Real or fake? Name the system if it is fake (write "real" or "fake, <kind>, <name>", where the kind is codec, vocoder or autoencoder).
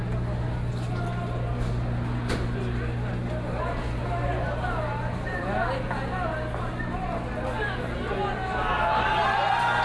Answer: real